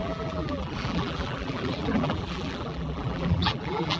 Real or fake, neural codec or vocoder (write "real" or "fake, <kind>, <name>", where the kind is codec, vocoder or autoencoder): fake, vocoder, BigVGAN v2